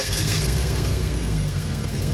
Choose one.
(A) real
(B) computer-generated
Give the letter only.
B